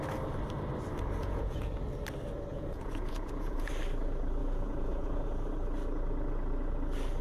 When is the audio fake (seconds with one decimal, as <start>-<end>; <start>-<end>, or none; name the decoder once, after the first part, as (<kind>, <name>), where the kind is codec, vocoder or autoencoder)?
1.2-1.7 (vocoder, Vocos); 2.5-3.7; 4.4-5.3